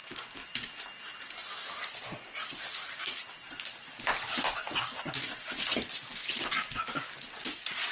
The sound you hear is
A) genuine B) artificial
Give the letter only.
A